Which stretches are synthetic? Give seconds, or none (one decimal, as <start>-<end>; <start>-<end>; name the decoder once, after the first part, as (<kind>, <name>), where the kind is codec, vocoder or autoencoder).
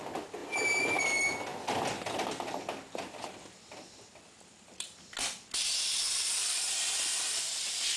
none